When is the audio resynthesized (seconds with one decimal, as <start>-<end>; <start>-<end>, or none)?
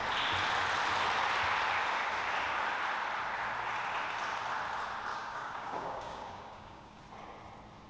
5.1-7.0